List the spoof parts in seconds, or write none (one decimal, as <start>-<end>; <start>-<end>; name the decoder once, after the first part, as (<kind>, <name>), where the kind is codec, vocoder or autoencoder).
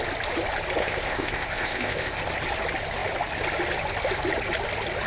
0.8-2.2 (codec, ZipCodec)